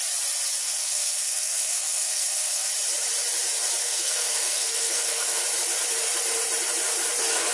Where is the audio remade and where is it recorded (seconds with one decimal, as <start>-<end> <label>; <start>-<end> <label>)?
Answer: 0.0-0.6 recorded; 0.6-2.7 remade; 2.7-3.8 recorded; 3.8-5.4 remade; 5.4-7.5 recorded